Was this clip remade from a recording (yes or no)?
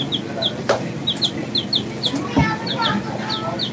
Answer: no